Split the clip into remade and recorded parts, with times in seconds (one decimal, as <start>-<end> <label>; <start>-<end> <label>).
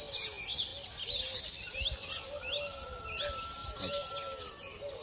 0.0-3.6 recorded; 3.6-4.1 remade; 4.1-5.0 recorded